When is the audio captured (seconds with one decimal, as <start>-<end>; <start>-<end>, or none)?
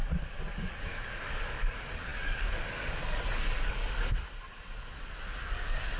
0.0-0.5; 3.8-5.4